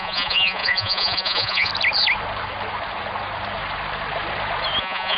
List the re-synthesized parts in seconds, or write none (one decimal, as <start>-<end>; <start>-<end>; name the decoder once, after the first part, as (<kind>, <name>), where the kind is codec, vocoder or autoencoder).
0.0-1.7 (vocoder, Vocos); 4.8-5.2